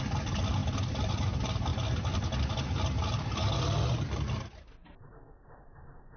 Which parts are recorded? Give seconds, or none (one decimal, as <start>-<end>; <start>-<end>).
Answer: 0.0-6.2